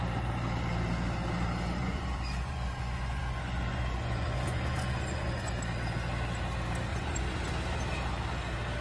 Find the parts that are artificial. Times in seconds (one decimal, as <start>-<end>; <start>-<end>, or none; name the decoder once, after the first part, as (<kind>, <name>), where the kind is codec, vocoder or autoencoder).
1.8-5.5 (vocoder, Vocos); 6.9-7.5